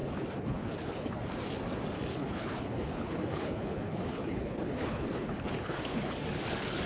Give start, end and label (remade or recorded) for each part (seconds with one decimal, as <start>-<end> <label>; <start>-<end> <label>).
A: 0.0-1.3 remade; 1.3-2.1 recorded; 2.1-6.1 remade; 6.1-6.9 recorded

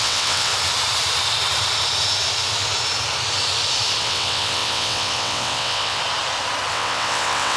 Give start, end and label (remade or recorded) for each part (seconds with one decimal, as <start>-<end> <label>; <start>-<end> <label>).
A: 0.0-0.5 remade; 0.5-4.0 recorded; 4.0-6.0 remade; 6.0-6.7 recorded; 6.7-7.6 remade

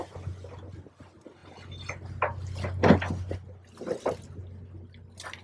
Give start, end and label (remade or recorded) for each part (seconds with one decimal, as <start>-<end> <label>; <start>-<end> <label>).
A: 0.0-5.4 recorded

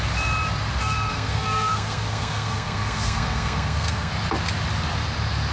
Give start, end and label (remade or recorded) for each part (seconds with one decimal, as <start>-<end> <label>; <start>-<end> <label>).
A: 0.0-0.8 recorded; 0.8-4.1 remade; 4.1-5.5 recorded

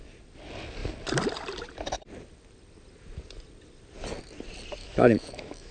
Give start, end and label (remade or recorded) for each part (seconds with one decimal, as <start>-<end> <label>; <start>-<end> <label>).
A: 0.0-4.8 recorded; 4.8-5.7 remade

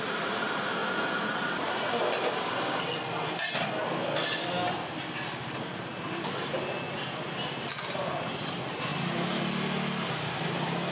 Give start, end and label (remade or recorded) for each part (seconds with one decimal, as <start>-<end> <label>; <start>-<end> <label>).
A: 0.0-10.9 recorded